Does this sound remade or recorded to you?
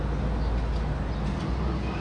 recorded